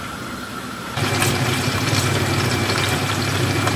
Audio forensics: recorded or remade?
remade